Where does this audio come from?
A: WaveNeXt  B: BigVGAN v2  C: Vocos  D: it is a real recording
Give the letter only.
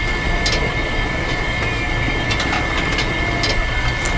D